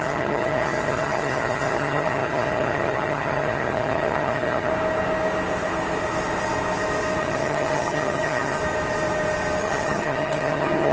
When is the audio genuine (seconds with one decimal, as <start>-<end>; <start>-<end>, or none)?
4.7-7.2; 8.6-9.6